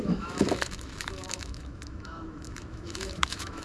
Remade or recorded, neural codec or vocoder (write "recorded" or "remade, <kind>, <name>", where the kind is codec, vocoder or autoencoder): remade, autoencoder, DAC-VAE